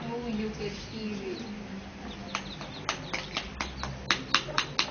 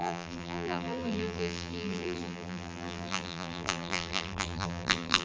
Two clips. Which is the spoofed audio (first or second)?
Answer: second